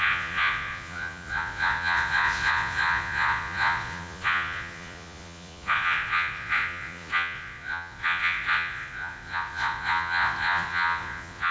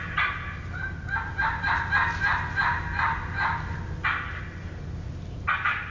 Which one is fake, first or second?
first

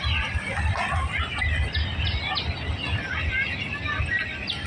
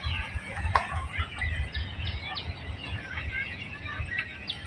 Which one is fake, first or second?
second